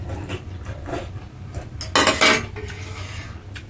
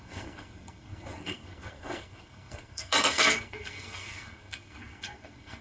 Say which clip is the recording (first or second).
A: first